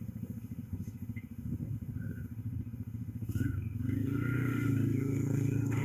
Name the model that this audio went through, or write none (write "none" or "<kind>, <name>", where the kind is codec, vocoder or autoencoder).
autoencoder, DAC-VAE